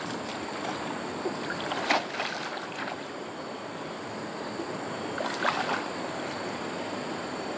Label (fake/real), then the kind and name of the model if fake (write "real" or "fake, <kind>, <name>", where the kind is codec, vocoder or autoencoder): real